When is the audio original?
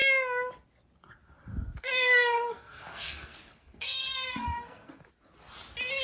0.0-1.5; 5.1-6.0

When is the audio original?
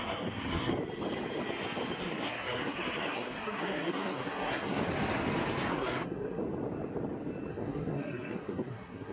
0.7-2.0; 4.8-5.7; 6.4-7.5